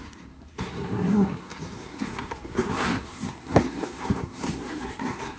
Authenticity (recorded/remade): remade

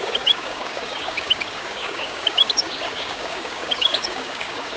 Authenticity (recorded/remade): remade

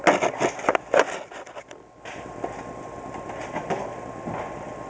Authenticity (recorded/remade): recorded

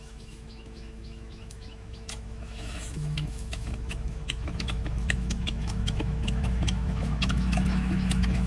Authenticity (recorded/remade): remade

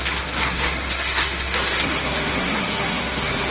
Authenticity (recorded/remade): remade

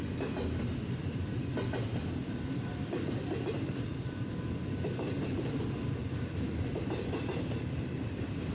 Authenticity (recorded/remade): recorded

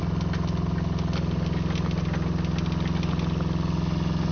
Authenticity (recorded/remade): recorded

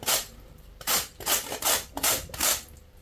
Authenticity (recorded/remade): recorded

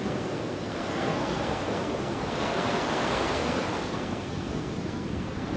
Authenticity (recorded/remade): remade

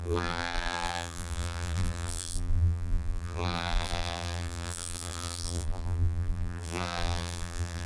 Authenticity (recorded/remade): remade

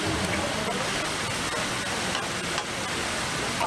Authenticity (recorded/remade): recorded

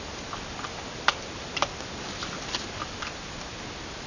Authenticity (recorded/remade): recorded